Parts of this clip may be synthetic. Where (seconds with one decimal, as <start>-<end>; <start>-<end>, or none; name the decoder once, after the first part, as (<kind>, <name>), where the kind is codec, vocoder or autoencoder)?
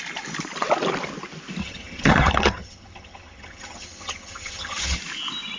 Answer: 1.6-5.0 (vocoder, HiFi-GAN)